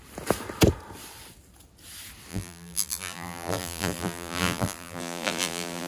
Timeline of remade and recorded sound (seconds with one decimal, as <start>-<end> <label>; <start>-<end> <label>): 0.0-2.3 recorded; 2.3-5.9 remade